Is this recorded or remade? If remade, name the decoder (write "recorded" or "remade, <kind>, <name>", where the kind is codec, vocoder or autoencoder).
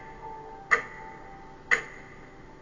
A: recorded